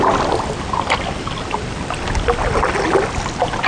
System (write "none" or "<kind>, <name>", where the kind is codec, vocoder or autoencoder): none